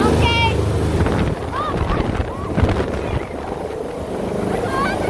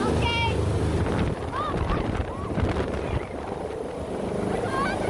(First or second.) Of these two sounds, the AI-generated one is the second